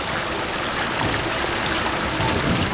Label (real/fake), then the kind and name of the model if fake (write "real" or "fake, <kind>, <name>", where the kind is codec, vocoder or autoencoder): real